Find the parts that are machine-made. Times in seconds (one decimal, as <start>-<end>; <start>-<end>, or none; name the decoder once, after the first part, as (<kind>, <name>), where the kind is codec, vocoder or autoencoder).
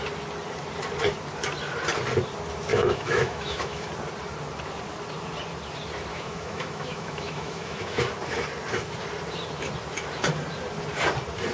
2.7-3.9 (autoencoder, DAC-VAE); 6.1-8.0